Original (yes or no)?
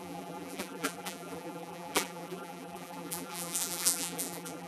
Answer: no